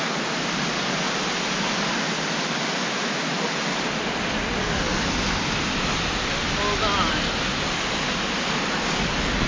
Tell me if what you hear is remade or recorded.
recorded